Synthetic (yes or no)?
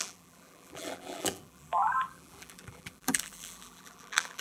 yes